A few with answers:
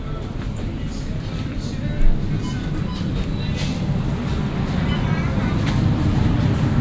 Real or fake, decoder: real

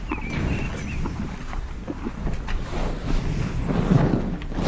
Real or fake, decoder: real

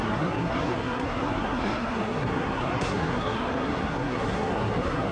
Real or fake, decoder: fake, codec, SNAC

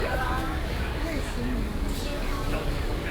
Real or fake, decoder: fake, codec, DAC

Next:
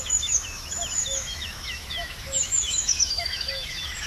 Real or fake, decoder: fake, autoencoder, DAC-VAE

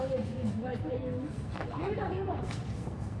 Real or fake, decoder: fake, codec, SNAC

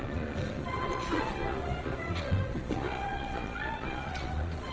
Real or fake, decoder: fake, vocoder, Vocos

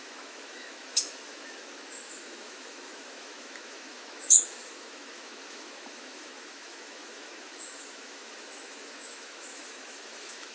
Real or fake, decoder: fake, autoencoder, DAC-VAE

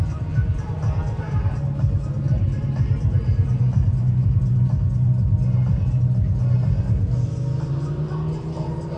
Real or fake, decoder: real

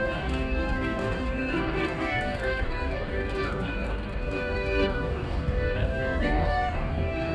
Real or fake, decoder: fake, codec, DAC